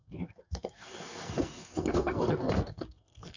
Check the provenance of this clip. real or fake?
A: fake